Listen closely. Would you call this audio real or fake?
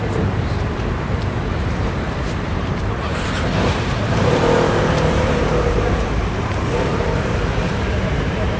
fake